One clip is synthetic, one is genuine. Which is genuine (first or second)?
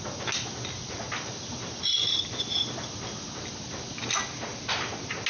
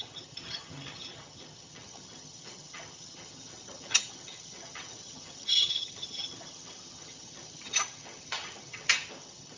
first